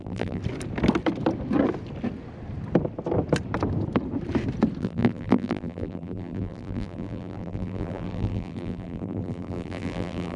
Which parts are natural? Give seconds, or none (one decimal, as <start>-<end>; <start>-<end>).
0.4-4.8